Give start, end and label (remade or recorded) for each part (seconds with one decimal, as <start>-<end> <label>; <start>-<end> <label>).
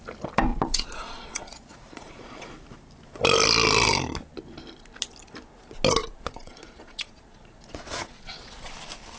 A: 0.0-0.5 recorded; 0.5-2.5 remade; 2.5-6.0 recorded; 6.0-8.7 remade; 8.7-9.2 recorded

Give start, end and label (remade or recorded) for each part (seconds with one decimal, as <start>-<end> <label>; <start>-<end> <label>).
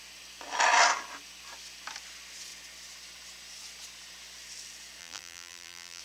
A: 0.0-5.0 recorded; 5.0-6.0 remade